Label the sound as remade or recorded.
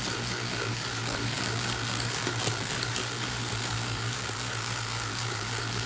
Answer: remade